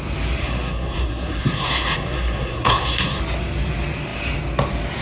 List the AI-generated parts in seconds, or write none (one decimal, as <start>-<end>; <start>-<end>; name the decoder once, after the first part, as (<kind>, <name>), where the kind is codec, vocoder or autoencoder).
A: 0.4-3.2 (codec, SNAC)